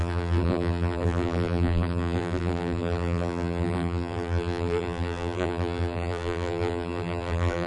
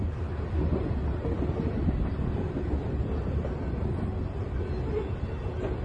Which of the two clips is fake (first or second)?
first